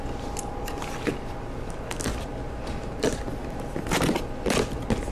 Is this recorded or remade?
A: recorded